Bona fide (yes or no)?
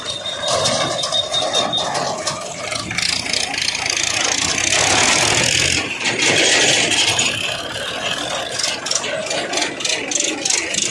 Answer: yes